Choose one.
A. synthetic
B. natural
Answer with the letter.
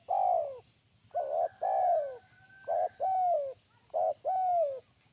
B